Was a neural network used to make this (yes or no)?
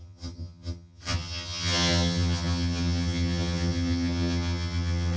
yes